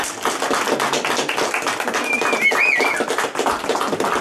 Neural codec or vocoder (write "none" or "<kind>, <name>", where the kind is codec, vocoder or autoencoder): none